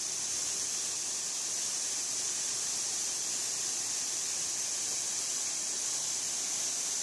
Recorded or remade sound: recorded